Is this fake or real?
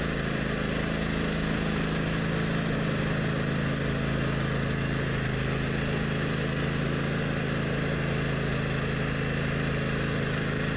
real